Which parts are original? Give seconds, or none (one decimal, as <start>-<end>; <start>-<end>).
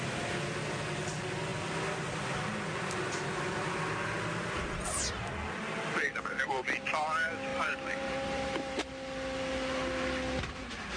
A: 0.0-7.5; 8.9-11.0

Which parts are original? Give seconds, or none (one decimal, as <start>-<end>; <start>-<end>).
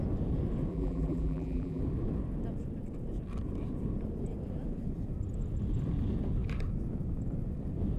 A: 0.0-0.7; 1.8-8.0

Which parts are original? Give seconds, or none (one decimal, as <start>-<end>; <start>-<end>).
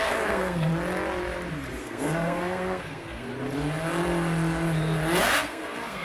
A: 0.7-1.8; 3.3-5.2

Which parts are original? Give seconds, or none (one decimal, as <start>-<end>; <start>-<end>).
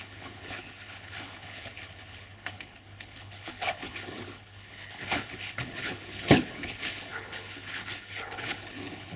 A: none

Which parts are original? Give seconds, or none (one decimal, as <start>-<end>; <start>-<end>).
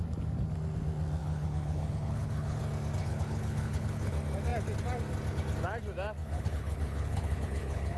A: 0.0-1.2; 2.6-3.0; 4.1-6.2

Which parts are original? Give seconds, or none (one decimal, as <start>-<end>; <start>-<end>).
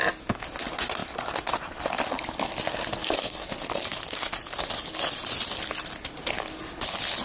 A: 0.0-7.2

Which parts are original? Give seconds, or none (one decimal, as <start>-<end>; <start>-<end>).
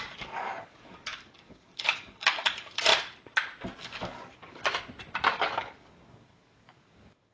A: 2.9-3.8; 4.6-5.3